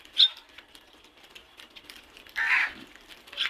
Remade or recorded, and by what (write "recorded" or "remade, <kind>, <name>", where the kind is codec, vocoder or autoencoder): remade, vocoder, BigVGAN v2